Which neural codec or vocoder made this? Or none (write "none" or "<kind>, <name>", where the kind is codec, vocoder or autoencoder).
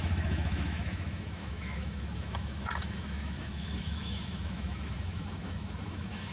autoencoder, DAC-VAE